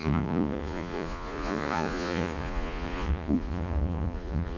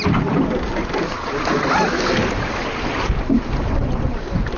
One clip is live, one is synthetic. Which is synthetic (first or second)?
first